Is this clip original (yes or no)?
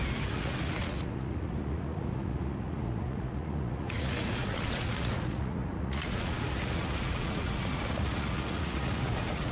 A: no